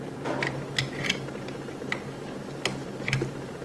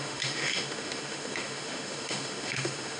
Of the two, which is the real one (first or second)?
first